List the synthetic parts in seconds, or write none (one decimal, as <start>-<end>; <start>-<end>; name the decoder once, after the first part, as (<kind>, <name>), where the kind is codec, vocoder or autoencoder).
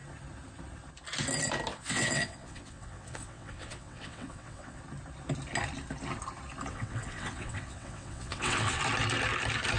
1.7-4.8 (vocoder, WaveNeXt); 6.7-8.8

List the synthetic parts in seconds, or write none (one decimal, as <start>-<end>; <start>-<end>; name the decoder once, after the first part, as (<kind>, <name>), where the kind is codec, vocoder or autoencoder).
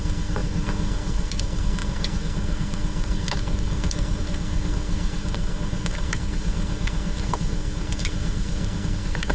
0.0-9.3 (codec, SNAC)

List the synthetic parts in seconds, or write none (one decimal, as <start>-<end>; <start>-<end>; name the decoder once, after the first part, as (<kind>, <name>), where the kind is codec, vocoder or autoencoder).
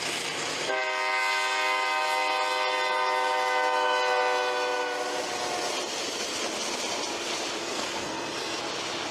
7.6-8.6 (codec, SNAC)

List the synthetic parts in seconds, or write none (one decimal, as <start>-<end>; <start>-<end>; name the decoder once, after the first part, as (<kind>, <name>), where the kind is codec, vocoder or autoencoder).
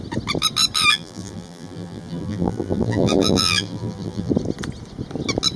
0.9-4.3 (vocoder, BigVGAN v2)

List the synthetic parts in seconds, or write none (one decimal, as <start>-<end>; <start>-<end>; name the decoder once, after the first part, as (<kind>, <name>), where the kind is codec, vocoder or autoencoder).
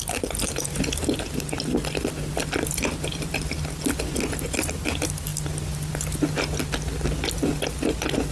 none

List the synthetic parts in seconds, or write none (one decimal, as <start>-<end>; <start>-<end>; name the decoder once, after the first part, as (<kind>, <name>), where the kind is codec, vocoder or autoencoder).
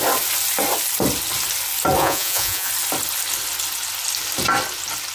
2.0-2.7 (vocoder, Vocos)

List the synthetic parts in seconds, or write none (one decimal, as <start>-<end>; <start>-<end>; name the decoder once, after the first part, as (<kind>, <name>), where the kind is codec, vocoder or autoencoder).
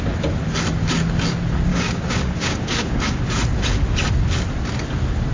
1.7-3.2 (codec, DAC)